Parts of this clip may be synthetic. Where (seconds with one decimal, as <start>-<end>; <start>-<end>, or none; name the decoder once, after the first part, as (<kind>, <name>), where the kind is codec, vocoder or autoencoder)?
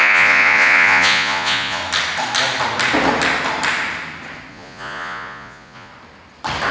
0.0-1.8 (vocoder, Vocos); 4.5-5.9